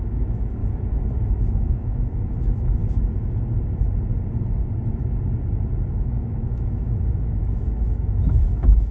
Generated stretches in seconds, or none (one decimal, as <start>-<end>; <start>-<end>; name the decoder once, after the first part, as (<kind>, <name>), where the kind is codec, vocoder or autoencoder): 0.0-0.6 (autoencoder, DAC-VAE); 1.3-2.8; 5.9-8.9